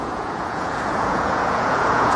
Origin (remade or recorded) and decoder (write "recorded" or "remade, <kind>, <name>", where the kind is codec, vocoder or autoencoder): remade, vocoder, Vocos